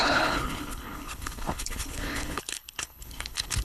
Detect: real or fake fake